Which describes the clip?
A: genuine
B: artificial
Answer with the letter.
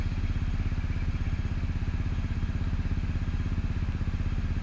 A